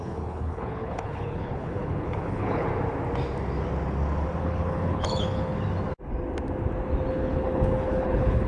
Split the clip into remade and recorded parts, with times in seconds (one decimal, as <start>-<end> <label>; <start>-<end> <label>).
0.0-2.7 remade; 2.7-4.4 recorded; 4.4-5.5 remade; 5.5-7.1 recorded; 7.1-8.5 remade